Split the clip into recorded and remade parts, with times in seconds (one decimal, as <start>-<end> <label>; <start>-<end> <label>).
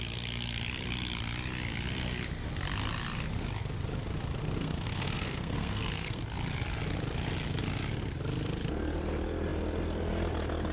0.0-4.6 recorded; 4.6-6.2 remade; 6.2-10.7 recorded